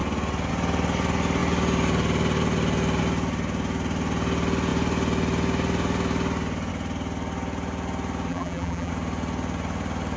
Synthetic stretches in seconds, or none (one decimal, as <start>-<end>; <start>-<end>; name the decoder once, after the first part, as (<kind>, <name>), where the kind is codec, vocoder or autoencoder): 8.3-8.9 (vocoder, BigVGAN v2)